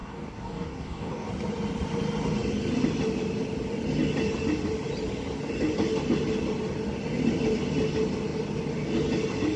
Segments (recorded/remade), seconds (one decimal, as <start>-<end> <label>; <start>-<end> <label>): 0.0-1.3 remade; 1.3-9.6 recorded